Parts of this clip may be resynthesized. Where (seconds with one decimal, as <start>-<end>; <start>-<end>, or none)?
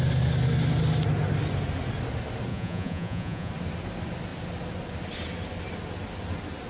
2.5-3.5